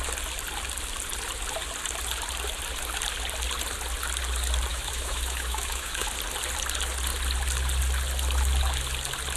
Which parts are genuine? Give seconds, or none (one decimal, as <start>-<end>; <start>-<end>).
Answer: 0.0-4.7; 6.1-9.4